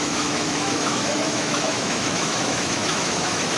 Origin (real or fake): fake